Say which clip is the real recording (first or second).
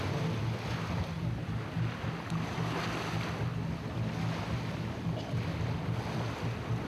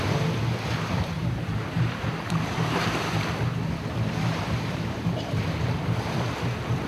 first